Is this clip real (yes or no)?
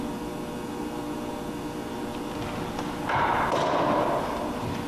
yes